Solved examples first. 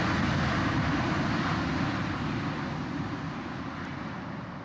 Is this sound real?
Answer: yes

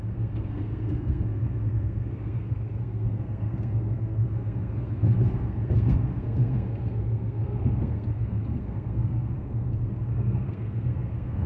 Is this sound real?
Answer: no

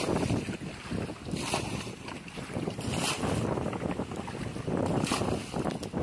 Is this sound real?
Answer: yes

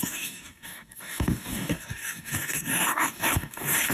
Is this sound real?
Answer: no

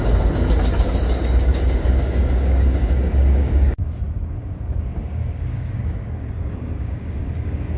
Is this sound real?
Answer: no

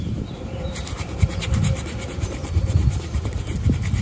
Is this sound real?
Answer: no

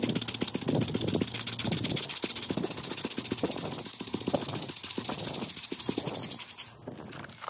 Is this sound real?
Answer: yes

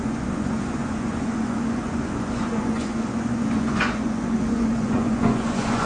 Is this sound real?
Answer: no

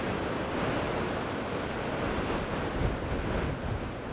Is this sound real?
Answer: yes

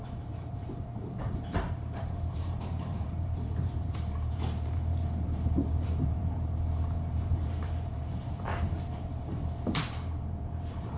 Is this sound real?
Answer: no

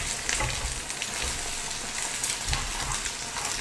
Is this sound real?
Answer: yes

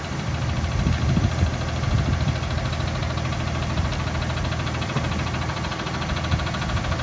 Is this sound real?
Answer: yes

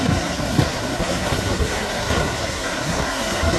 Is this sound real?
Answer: no